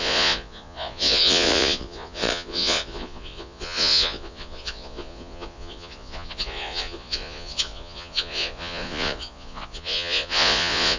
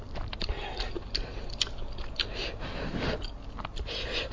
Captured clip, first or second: second